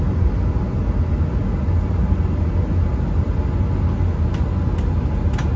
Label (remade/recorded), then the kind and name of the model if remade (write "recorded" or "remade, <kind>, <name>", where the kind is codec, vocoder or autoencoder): recorded